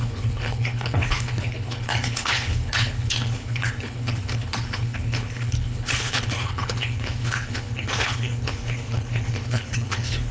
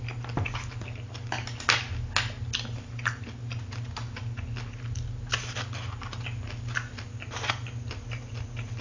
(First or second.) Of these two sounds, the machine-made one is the first